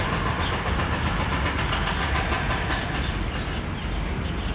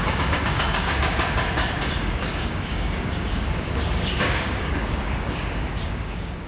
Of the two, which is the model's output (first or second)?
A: second